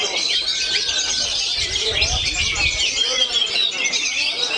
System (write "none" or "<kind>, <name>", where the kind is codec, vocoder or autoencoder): none